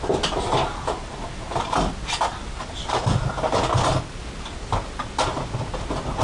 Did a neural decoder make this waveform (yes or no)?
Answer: no